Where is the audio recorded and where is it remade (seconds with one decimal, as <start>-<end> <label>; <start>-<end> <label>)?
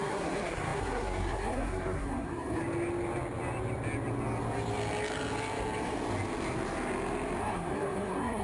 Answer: 0.0-2.6 remade; 2.6-7.4 recorded; 7.4-8.4 remade